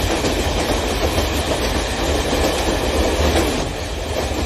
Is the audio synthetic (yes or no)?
no